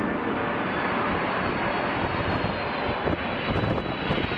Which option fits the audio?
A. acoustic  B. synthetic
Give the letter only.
A